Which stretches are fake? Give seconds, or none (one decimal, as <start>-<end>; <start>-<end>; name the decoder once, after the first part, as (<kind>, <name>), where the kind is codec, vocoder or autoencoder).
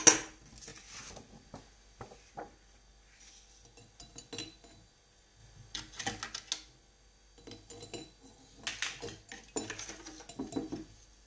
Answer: none